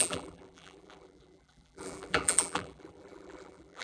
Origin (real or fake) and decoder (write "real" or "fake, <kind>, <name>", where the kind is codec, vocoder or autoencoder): fake, vocoder, BigVGAN v2